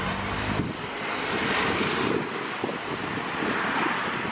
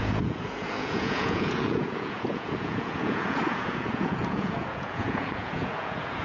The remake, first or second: second